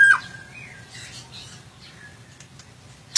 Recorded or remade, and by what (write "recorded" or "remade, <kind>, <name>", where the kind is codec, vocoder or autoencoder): recorded